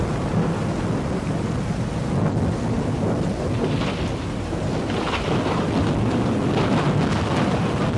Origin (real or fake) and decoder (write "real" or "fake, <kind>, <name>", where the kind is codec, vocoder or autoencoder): real